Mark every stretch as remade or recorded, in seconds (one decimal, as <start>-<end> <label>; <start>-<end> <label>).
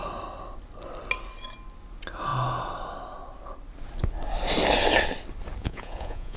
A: 0.0-5.6 recorded; 5.6-6.4 remade